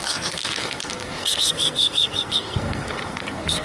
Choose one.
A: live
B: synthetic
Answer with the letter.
B